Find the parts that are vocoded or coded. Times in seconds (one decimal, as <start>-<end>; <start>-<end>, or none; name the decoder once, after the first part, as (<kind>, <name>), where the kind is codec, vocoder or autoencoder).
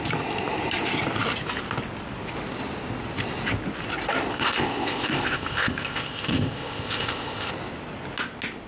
4.3-7.5 (codec, ZipCodec)